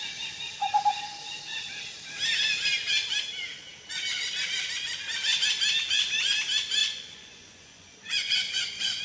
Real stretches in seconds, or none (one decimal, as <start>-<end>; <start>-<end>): 0.0-6.8